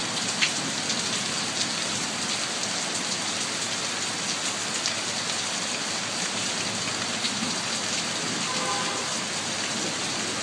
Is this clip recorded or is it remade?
recorded